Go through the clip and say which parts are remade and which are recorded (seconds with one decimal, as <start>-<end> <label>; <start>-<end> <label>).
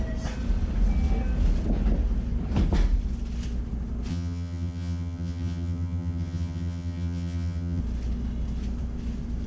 0.0-4.1 recorded; 4.1-7.8 remade; 7.8-9.5 recorded